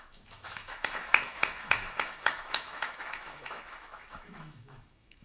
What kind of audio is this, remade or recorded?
remade